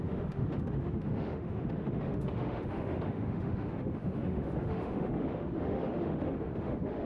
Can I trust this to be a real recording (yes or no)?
no